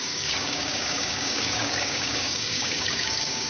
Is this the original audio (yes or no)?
no